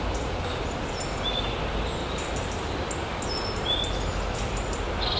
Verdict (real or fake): real